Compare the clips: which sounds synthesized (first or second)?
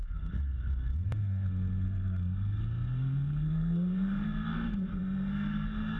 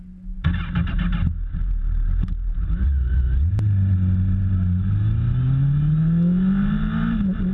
first